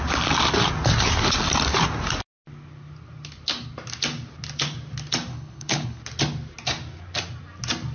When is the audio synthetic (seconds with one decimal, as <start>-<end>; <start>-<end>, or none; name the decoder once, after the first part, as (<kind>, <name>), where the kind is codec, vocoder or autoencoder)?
5.3-6.0 (codec, HILCodec)